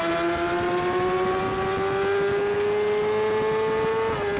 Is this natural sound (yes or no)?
yes